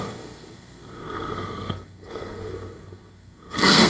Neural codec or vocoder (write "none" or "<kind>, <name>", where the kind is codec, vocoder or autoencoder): codec, SNAC